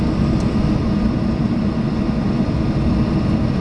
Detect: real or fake real